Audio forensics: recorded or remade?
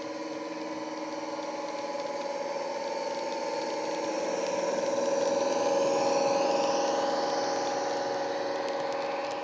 recorded